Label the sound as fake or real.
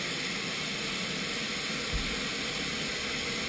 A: real